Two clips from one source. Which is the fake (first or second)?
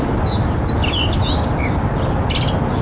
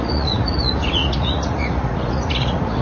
second